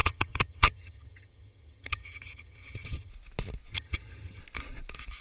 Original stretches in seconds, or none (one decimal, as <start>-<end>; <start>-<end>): 3.1-3.7; 4.4-5.2